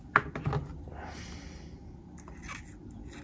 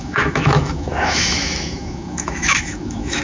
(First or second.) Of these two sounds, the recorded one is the first